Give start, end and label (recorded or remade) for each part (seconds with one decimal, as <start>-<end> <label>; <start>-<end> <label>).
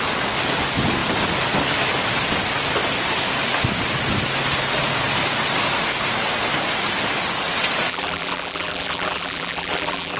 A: 0.0-7.9 recorded; 7.9-10.2 remade